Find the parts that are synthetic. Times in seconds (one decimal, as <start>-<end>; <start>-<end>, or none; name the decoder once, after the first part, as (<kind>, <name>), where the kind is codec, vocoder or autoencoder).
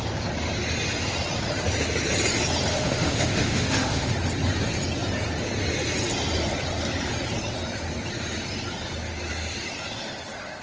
2.7-4.1 (autoencoder, DAC-VAE)